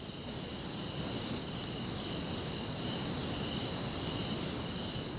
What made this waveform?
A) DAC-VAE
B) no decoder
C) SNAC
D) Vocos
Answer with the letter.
B